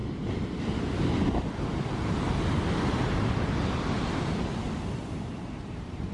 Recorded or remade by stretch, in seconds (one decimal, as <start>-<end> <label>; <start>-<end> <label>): 0.0-6.1 recorded